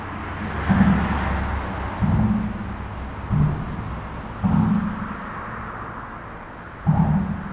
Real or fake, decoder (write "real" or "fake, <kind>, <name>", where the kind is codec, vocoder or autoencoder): real